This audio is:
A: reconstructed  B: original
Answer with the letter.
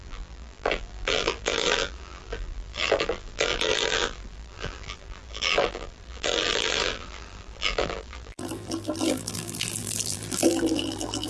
A